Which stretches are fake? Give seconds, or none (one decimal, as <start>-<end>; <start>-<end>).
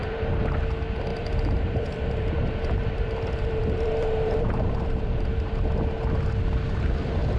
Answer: 0.0-0.6; 1.1-5.5